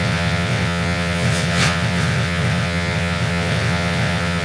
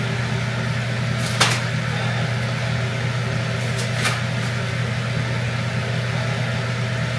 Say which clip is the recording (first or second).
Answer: second